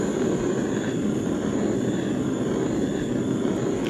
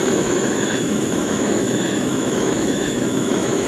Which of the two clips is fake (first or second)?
second